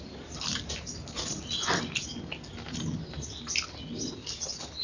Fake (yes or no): no